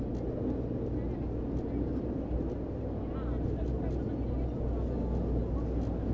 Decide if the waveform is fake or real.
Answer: real